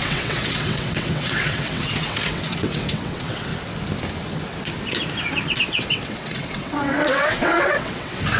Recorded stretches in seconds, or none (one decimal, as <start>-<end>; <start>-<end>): 3.5-5.6